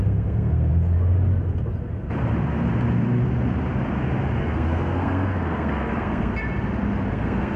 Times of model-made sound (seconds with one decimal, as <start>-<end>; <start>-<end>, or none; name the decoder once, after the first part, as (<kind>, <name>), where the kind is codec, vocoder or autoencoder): 0.0-0.7 (codec, SNAC); 4.4-6.3; 7.1-7.6